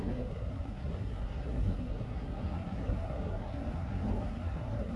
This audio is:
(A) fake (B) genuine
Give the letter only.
A